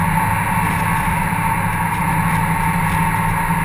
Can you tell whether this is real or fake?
real